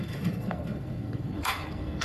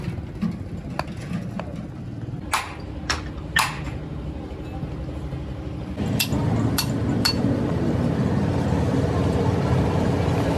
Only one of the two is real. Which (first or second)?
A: second